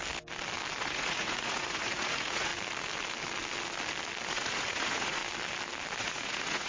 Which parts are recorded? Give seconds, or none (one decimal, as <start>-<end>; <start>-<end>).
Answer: 0.0-0.8; 2.5-4.3; 5.2-6.0